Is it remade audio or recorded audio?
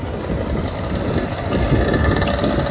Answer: recorded